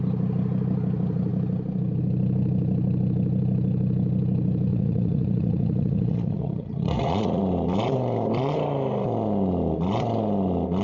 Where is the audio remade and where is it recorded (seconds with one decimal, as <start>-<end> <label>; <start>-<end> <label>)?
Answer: 0.0-4.7 recorded; 4.7-7.4 remade; 7.4-10.8 recorded